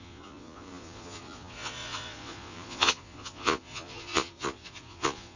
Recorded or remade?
remade